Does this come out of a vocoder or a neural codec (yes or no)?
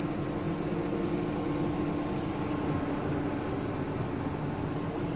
no